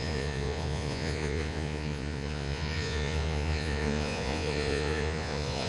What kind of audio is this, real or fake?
fake